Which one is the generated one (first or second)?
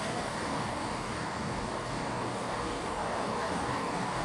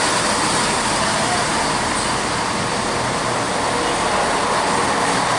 first